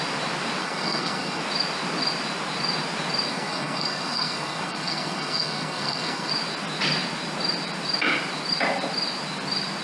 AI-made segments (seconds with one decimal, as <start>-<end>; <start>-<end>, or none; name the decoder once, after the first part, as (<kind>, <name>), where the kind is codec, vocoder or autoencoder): 0.6-1.4 (codec, SNAC); 3.3-6.3